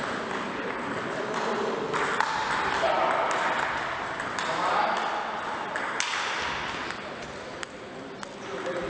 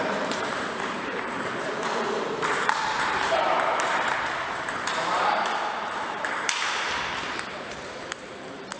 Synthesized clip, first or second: second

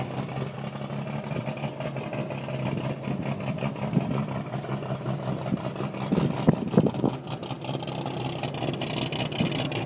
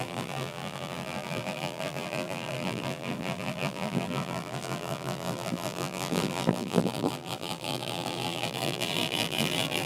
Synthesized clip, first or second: second